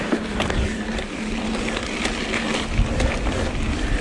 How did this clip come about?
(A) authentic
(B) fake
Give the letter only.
A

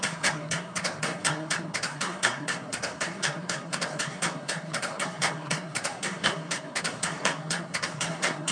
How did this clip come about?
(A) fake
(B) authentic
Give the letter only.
A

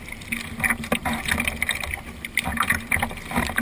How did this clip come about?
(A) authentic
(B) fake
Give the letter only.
A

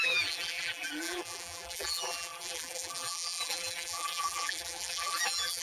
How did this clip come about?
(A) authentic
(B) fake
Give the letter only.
B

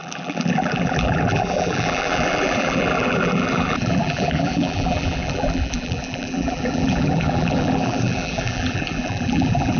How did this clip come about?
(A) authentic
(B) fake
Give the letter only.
B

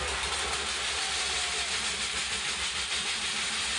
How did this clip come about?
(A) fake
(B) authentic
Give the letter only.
B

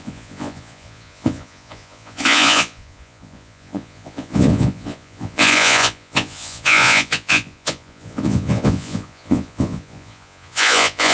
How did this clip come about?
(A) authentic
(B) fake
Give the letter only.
B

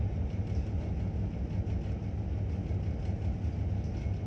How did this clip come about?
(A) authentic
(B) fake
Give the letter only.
A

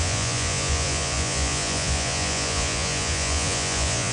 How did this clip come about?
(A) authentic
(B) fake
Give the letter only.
B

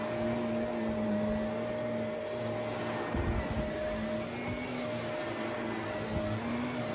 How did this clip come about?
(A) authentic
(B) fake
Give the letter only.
A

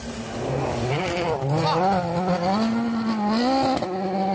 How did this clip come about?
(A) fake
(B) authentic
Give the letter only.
B